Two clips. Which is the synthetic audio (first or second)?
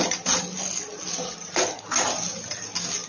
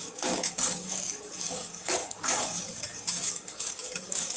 second